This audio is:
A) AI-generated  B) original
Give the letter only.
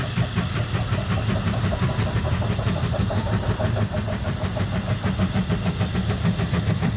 B